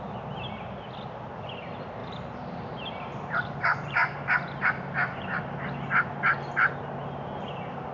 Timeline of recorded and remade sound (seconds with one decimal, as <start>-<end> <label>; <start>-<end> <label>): 0.0-2.0 recorded; 2.0-5.4 remade; 5.4-7.9 recorded